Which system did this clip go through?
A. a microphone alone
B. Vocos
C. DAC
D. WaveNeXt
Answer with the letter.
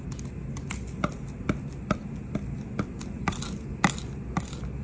A